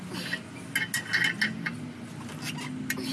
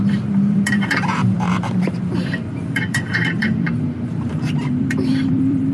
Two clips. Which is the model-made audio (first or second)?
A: second